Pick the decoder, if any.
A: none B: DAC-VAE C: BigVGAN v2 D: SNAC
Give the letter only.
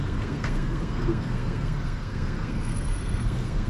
D